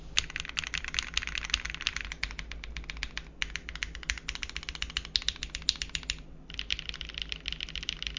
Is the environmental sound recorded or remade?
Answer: recorded